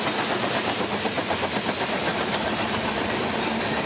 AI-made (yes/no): no